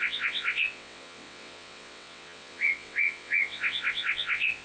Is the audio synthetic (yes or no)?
yes